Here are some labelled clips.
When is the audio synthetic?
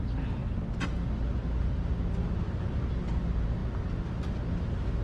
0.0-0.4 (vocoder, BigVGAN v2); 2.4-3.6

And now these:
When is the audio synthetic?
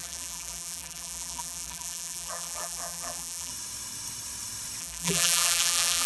0.0-3.5 (vocoder, BigVGAN v2); 4.8-6.1